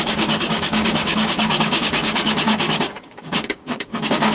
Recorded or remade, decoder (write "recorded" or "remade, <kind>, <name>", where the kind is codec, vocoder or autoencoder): remade, codec, DAC